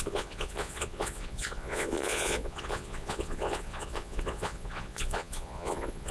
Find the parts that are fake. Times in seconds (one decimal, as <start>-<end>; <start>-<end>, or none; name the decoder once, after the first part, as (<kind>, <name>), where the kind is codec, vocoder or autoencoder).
0.0-6.1 (vocoder, Vocos)